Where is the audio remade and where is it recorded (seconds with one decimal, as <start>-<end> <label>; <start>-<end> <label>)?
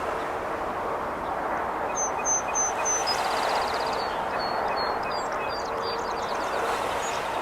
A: 0.0-7.4 recorded